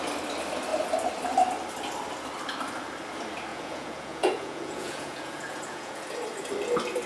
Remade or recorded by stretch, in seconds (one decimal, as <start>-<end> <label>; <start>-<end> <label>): 0.0-3.5 recorded; 3.5-6.0 remade; 6.0-7.1 recorded